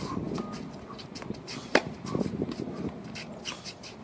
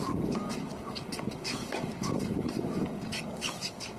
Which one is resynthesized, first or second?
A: second